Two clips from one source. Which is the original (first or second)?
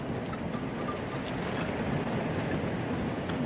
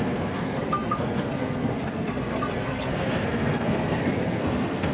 first